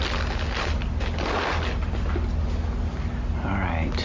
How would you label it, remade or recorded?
recorded